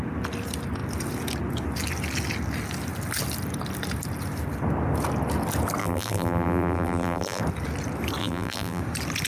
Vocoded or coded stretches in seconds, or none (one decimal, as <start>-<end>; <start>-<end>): 5.8-7.4; 8.2-8.8